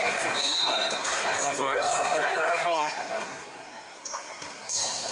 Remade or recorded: remade